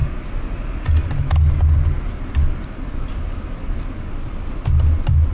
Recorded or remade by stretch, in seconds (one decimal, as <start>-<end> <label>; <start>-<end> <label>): 0.0-5.3 recorded

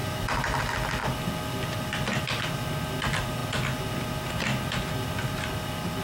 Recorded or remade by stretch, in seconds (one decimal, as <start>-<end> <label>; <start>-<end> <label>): 0.0-6.0 recorded